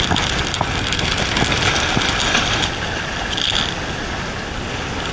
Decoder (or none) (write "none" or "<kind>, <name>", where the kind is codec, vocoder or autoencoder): none